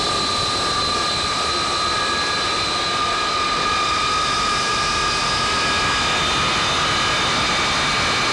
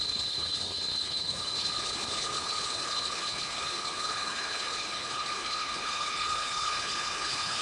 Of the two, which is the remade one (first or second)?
second